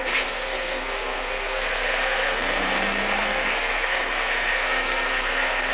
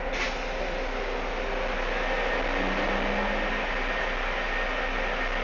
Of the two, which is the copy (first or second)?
first